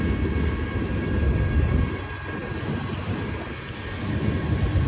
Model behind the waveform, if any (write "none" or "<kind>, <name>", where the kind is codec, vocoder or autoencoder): none